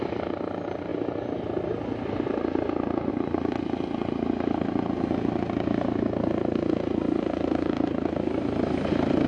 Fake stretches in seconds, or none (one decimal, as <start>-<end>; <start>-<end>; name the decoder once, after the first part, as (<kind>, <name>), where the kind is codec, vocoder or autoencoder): none